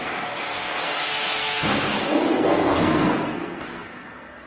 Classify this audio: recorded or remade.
remade